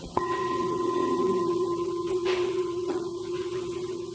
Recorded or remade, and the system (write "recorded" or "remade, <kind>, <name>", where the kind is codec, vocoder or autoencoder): remade, vocoder, WaveNeXt